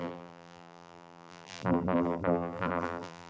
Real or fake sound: fake